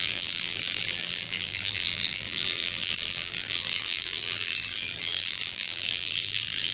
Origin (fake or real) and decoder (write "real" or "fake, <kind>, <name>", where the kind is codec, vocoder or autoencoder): fake, vocoder, BigVGAN v2